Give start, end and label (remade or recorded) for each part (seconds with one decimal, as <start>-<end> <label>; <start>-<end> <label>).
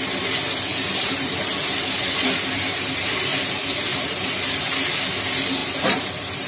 0.0-0.7 recorded; 0.7-1.4 remade; 1.4-3.9 recorded; 3.9-4.6 remade; 4.6-5.6 recorded; 5.6-6.5 remade